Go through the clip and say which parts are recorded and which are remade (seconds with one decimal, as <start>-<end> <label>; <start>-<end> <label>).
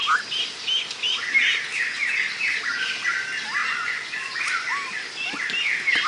0.0-3.6 recorded; 3.6-4.4 remade; 4.4-6.1 recorded